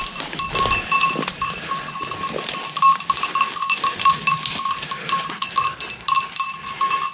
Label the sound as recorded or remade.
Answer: recorded